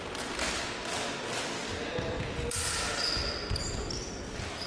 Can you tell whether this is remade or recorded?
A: recorded